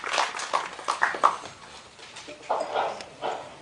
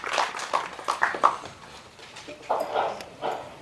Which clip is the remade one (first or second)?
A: second